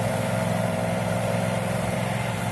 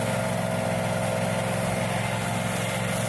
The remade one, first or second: first